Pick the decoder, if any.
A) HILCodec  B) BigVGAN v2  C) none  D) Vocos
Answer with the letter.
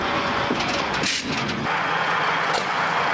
D